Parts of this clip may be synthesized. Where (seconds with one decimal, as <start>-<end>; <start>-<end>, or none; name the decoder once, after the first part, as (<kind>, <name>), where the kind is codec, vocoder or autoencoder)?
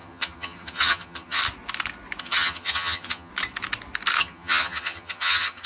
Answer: 0.0-1.4 (vocoder, HiFi-GAN); 2.2-3.3; 4.2-5.7